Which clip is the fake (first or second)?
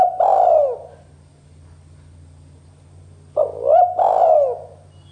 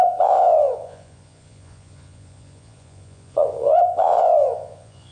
second